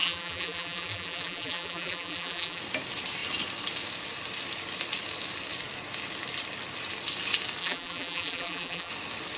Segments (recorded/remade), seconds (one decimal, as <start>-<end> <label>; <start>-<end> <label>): 0.0-2.6 remade; 2.6-7.6 recorded; 7.6-8.9 remade; 8.9-9.4 recorded